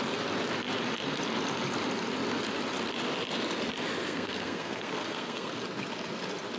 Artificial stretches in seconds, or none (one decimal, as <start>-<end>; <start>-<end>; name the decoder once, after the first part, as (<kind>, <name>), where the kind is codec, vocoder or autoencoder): 4.0-5.5 (codec, SNAC)